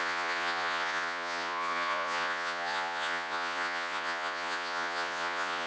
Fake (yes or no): yes